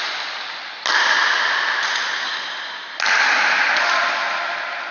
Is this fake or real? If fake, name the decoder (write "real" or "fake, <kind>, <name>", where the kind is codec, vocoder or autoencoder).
real